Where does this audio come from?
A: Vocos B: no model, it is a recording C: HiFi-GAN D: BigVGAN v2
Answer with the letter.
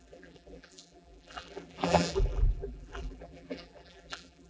D